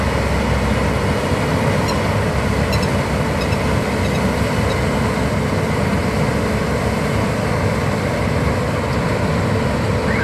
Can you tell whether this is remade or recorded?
recorded